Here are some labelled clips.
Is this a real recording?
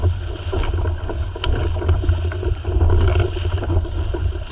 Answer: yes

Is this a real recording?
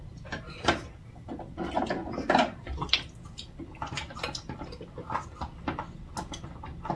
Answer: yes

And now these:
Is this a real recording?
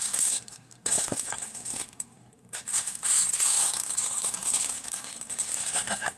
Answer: no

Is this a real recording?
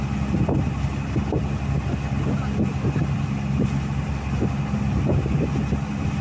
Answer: yes